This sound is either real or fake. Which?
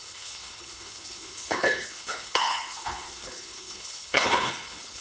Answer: fake